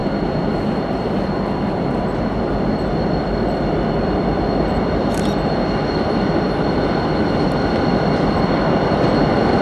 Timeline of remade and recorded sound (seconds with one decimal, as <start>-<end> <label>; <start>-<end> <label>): 0.0-9.6 remade